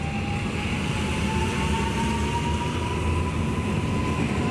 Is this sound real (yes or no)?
yes